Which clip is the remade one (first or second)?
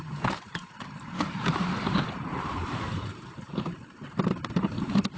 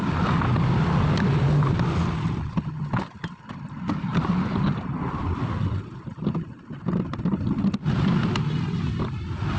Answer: first